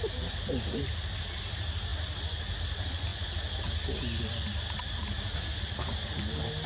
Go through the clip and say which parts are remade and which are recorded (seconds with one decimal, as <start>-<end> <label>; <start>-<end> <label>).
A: 0.0-6.7 recorded